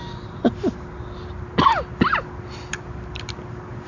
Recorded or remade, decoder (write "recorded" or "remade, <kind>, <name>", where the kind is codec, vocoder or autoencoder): recorded